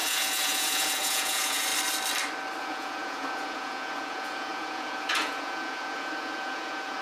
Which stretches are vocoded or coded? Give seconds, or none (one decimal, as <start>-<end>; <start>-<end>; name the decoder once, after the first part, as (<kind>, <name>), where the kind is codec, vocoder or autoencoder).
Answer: 0.0-1.7 (vocoder, Vocos); 2.6-7.0